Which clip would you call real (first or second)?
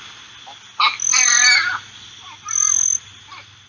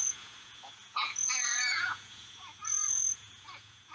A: first